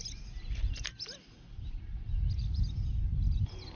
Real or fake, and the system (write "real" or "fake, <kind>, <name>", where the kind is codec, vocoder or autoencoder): real